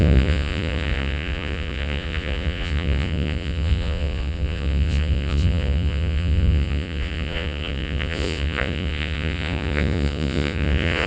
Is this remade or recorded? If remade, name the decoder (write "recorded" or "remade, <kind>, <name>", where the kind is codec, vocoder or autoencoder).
remade, vocoder, Vocos